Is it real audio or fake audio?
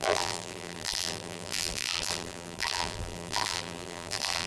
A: fake